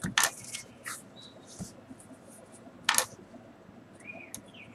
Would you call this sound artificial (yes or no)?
no